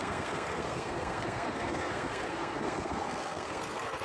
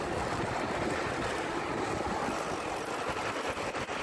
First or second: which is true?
second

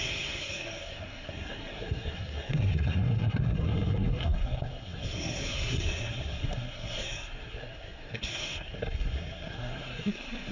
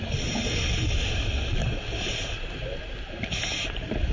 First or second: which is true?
second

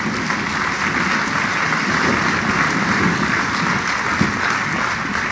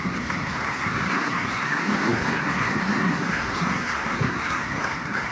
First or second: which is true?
first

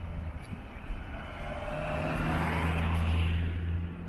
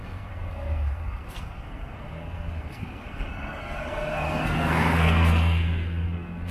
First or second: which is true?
first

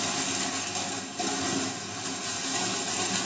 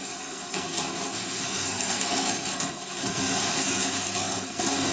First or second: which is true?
first